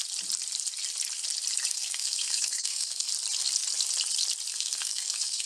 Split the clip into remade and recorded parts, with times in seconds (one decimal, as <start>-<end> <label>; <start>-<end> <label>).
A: 0.0-1.7 recorded; 1.7-3.1 remade; 3.1-4.5 recorded; 4.5-5.5 remade